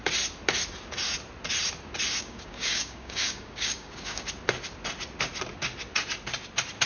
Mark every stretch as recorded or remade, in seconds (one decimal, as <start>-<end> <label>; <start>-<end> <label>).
0.0-2.2 recorded; 2.2-4.2 remade; 4.2-6.9 recorded